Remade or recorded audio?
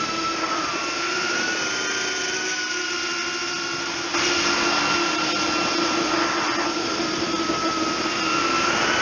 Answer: recorded